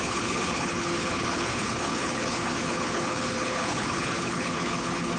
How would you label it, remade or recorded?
remade